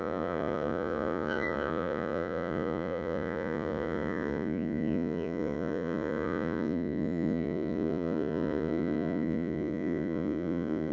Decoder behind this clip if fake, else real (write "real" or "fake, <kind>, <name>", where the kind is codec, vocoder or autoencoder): fake, vocoder, Vocos